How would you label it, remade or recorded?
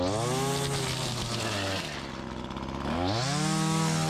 recorded